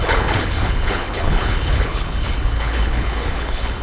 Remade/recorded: remade